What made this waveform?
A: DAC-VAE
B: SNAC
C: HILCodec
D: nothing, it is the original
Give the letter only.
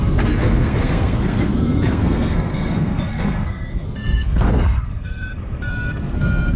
B